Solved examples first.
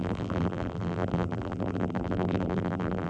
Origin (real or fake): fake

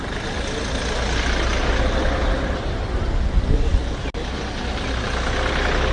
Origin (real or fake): real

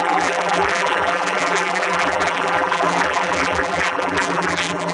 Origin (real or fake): fake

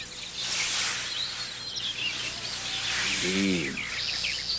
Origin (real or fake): real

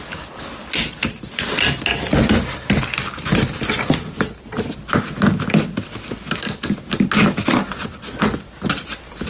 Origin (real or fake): real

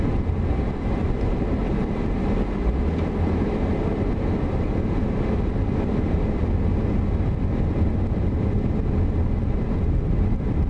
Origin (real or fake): real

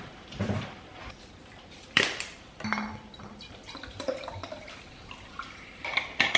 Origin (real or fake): fake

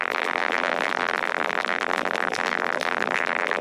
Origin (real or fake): fake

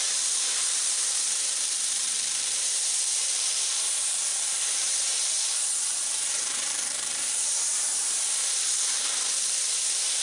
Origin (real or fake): fake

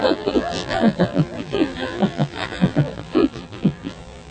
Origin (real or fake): fake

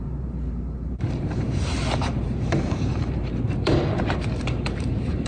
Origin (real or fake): fake